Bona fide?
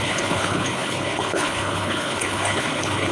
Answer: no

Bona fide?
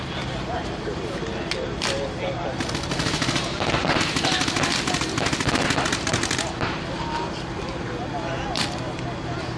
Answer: yes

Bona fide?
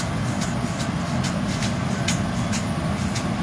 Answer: yes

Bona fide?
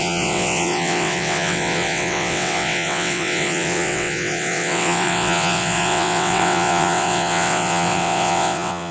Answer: no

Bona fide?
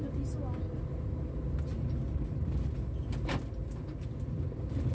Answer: yes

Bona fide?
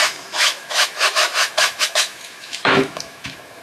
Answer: no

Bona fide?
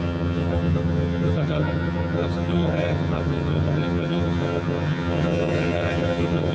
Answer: no